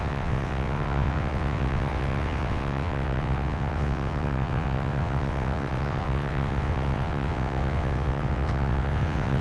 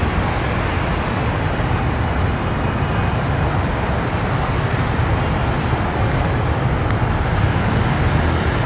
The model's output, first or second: first